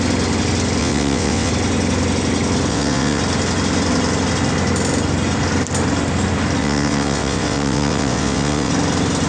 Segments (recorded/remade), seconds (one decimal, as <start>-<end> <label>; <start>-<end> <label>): 0.0-0.8 recorded; 0.8-1.5 remade; 1.5-2.7 recorded; 2.7-3.2 remade; 3.2-6.6 recorded; 6.6-8.7 remade; 8.7-9.3 recorded